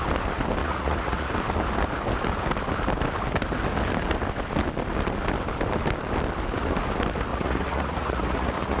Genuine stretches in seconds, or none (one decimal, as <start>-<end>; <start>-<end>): 0.0-0.6; 1.3-7.3